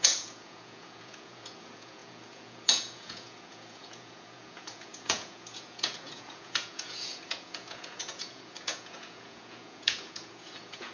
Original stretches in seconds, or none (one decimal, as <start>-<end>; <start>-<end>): none